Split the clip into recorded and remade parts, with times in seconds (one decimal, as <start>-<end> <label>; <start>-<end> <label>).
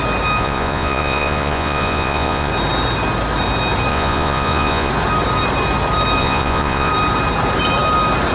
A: 0.0-0.4 recorded; 0.4-2.5 remade; 2.5-3.9 recorded; 3.9-4.9 remade; 4.9-6.2 recorded; 6.2-6.9 remade; 6.9-8.3 recorded